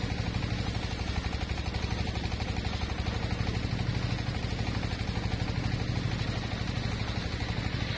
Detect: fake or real real